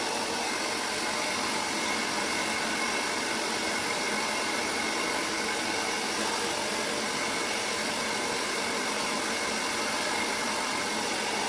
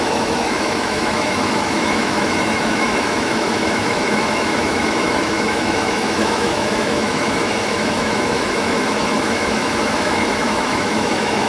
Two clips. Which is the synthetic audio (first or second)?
second